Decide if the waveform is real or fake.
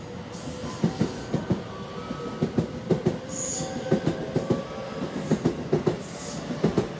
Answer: real